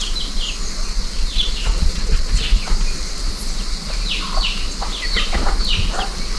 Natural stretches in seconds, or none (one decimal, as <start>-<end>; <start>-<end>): 0.0-0.8; 2.3-6.4